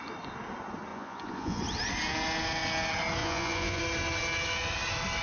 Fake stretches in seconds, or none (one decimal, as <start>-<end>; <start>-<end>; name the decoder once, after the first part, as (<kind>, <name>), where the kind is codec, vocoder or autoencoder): 0.9-1.6 (vocoder, Vocos); 3.2-3.8